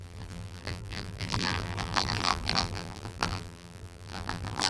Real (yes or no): no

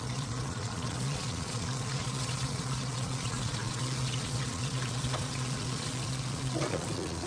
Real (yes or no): no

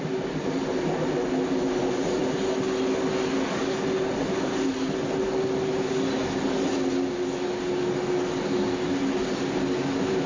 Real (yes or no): yes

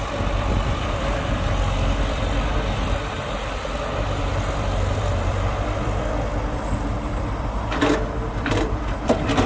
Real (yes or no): no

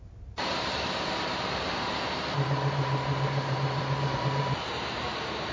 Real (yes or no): no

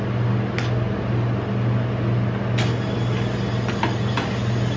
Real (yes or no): yes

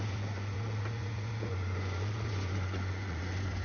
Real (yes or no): no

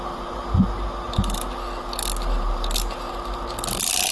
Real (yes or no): yes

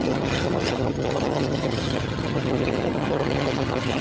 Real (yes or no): no